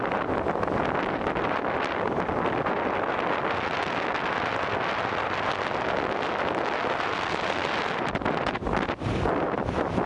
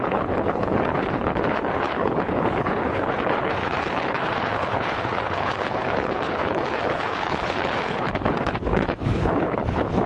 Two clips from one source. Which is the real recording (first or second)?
first